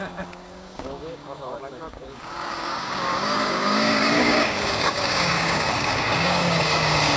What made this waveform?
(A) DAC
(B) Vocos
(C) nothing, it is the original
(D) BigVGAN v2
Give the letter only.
A